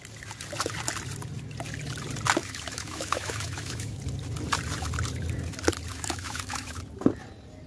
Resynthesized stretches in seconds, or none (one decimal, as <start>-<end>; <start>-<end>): 2.4-4.0; 5.9-6.8